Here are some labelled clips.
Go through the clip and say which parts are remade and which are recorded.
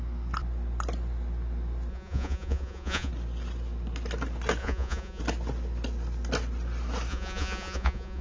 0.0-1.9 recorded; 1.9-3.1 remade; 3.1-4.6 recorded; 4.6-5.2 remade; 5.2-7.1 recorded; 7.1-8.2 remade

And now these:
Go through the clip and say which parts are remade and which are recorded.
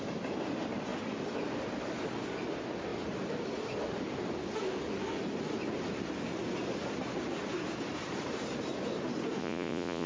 0.0-9.4 recorded; 9.4-10.1 remade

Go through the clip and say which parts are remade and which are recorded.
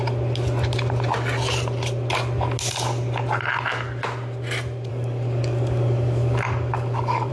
0.0-4.9 recorded; 4.9-7.3 remade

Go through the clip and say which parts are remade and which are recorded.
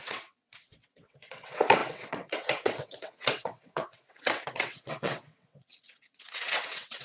0.0-7.0 remade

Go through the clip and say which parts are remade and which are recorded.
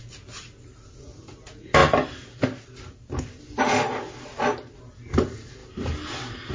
0.0-6.5 recorded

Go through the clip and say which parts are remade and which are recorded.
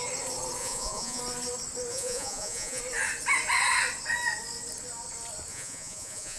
0.0-0.6 recorded; 0.6-1.2 remade; 1.2-1.9 recorded; 1.9-2.8 remade; 2.8-5.5 recorded; 5.5-6.4 remade